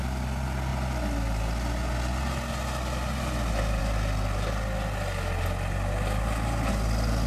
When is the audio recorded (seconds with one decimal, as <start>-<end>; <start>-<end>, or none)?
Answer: 0.0-7.3